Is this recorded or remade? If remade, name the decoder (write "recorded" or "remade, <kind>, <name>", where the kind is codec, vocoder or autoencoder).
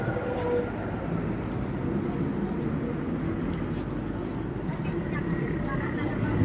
recorded